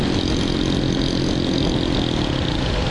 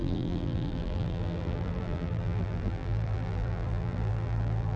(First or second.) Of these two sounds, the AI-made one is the second